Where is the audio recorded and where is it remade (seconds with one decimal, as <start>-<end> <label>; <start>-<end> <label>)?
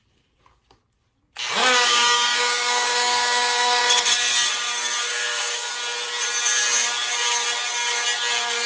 0.0-1.6 recorded; 1.6-3.8 remade; 3.8-5.0 recorded; 5.0-5.7 remade; 5.7-8.7 recorded